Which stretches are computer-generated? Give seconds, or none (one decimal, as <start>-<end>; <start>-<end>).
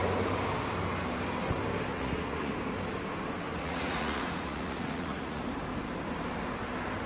1.9-2.5; 3.6-5.4